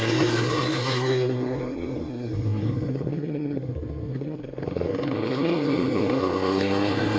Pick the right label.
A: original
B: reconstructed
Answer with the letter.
B